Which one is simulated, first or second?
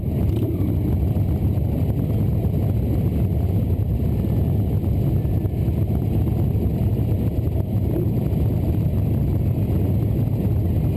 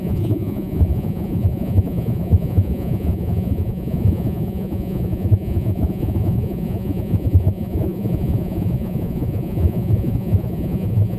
second